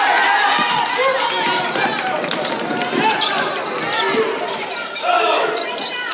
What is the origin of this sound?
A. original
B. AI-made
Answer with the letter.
A